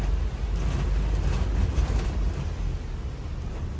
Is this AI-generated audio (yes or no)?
no